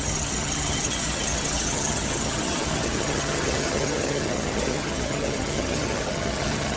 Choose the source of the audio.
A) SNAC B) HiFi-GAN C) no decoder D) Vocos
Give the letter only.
B